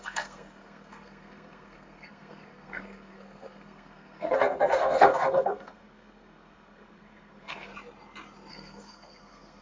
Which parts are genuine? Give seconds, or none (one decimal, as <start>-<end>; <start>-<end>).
7.7-8.5